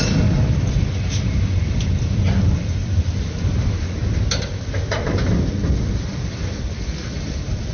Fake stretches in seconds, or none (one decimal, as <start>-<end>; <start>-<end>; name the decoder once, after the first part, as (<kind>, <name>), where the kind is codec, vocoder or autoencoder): 0.0-4.0 (vocoder, BigVGAN v2); 5.9-7.7